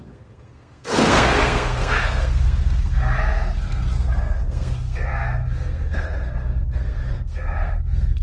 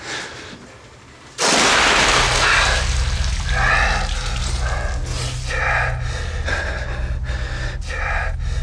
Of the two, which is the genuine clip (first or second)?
second